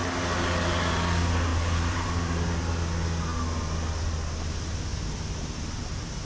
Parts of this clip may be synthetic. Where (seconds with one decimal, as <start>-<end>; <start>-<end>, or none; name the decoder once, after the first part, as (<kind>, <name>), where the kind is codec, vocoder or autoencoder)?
1.5-2.6 (vocoder, BigVGAN v2); 4.9-6.2